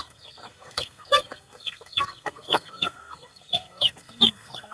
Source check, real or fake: fake